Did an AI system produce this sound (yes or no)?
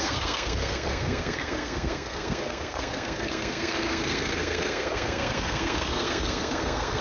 yes